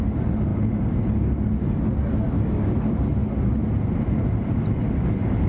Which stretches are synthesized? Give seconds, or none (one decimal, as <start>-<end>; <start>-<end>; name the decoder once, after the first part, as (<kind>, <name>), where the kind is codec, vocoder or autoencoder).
none